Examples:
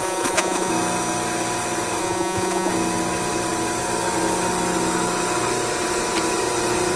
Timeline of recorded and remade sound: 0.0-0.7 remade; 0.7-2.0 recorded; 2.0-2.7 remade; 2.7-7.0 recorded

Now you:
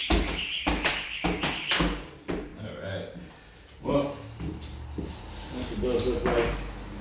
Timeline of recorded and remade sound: 0.0-7.0 recorded

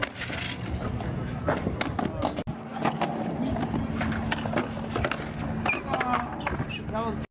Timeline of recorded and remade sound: 0.0-7.3 recorded

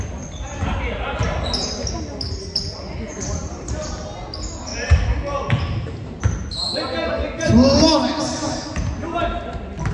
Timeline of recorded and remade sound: 0.0-9.9 recorded

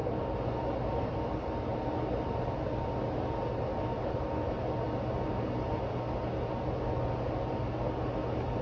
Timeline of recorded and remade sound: 0.0-8.6 recorded

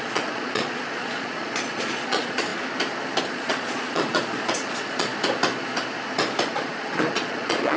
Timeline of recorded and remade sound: 0.0-2.5 remade; 2.5-3.2 recorded; 3.2-5.1 remade; 5.1-6.4 recorded; 6.4-7.8 remade